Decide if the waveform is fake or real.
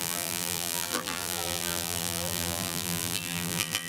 fake